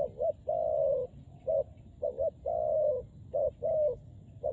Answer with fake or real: real